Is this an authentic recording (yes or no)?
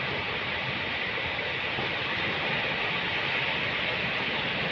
yes